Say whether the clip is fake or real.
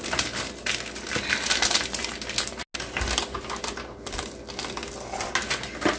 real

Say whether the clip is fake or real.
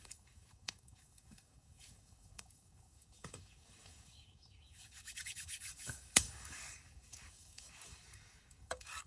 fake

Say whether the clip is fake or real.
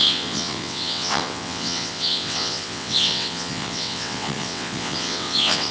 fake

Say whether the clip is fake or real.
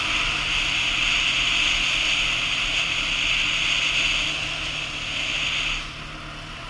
real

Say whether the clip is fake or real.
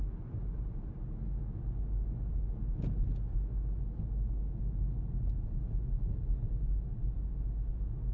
real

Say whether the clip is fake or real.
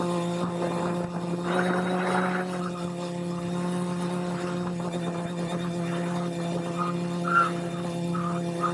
real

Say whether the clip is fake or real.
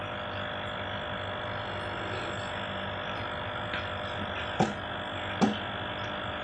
real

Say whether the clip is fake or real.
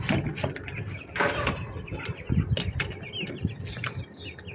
real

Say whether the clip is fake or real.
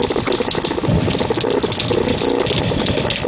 real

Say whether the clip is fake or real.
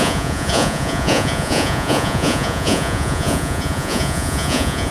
fake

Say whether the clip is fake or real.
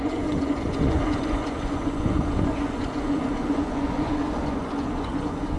fake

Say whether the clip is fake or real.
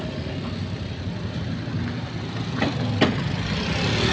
real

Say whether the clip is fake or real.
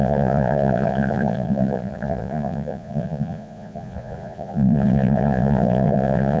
fake